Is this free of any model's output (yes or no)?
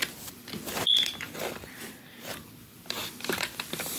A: no